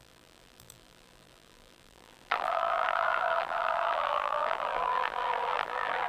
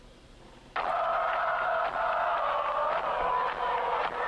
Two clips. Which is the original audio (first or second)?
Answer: second